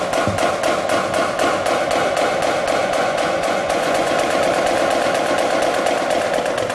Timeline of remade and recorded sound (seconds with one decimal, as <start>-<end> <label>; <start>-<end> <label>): 0.0-2.8 recorded; 2.8-4.1 remade; 4.1-6.7 recorded

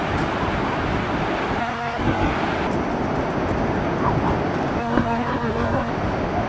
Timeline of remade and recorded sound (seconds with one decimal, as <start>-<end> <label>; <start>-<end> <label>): 0.0-1.6 recorded; 1.6-2.3 remade; 2.3-4.8 recorded; 4.8-5.9 remade; 5.9-6.5 recorded

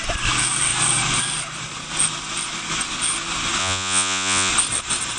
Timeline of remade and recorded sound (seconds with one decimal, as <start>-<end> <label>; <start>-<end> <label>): 0.0-3.6 recorded; 3.6-4.5 remade; 4.5-5.2 recorded

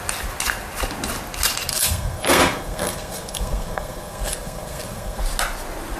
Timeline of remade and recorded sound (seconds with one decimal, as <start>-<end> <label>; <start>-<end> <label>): 0.0-1.7 recorded; 1.7-5.2 remade; 5.2-6.0 recorded

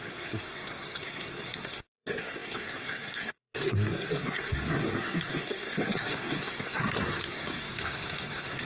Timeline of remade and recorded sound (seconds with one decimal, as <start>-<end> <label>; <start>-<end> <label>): 0.0-8.6 remade

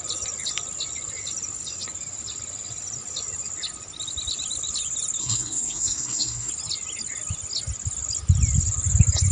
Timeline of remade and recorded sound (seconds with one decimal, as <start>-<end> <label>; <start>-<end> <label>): 0.0-5.2 recorded; 5.2-6.5 remade; 6.5-9.3 recorded

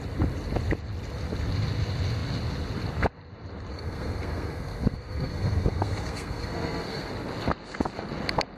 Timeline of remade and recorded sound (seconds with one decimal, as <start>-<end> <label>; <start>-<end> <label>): 0.0-3.7 recorded; 3.7-7.1 remade; 7.1-8.6 recorded

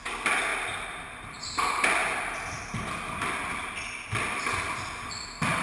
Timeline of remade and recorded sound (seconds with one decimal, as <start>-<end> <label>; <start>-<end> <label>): 0.0-5.6 recorded